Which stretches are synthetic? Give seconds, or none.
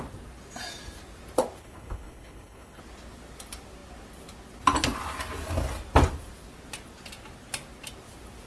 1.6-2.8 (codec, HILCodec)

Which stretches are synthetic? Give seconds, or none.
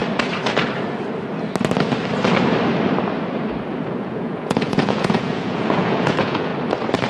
4.0-6.5 (vocoder, Vocos)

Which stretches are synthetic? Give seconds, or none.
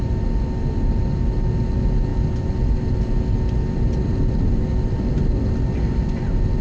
none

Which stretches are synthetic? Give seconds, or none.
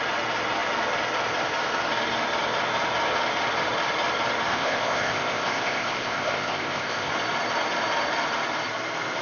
4.5-7.1 (codec, ZipCodec)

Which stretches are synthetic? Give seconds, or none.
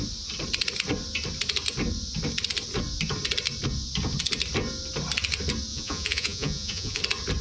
5.7-7.0 (vocoder, Vocos)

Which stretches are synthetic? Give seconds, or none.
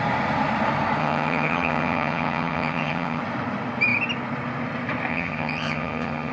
1.0-3.2 (vocoder, HiFi-GAN); 5.1-6.3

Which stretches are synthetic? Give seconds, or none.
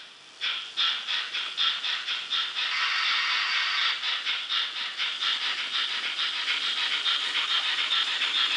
none